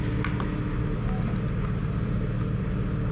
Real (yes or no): yes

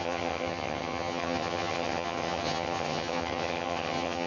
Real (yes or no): no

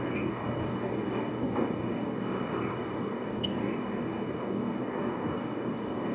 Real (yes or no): no